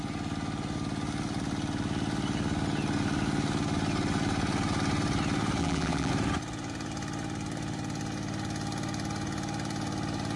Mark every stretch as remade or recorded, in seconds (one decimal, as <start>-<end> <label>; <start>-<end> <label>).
0.0-5.6 recorded; 5.6-6.1 remade; 6.1-10.4 recorded